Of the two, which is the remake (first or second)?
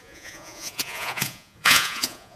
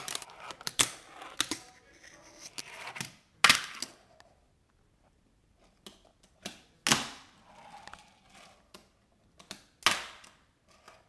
first